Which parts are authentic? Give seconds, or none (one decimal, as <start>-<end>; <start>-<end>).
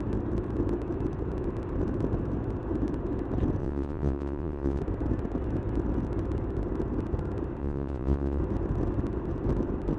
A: 0.0-3.6; 4.8-7.6; 8.4-10.0